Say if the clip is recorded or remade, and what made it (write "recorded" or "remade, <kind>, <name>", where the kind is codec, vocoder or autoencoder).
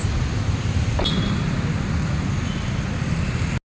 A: recorded